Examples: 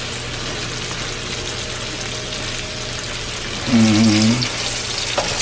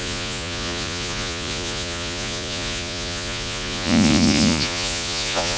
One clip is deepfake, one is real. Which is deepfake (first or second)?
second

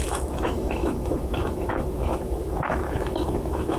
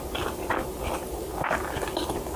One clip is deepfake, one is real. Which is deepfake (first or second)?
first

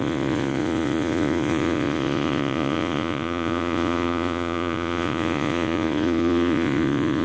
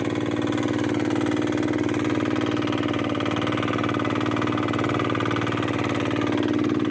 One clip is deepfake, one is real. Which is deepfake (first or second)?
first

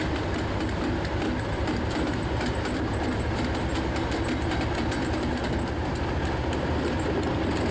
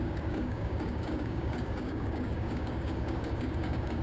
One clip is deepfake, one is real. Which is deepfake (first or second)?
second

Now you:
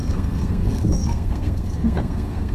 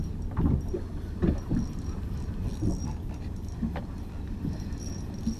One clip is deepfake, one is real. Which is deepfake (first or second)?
first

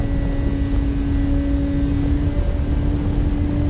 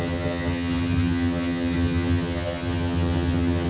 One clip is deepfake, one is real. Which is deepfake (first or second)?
second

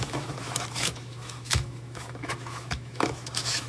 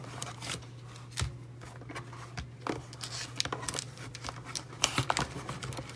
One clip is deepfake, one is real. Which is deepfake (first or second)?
first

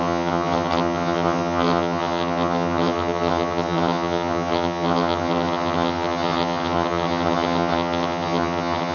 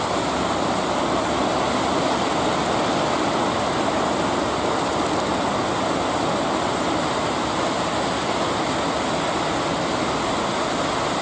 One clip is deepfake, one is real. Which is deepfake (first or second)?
first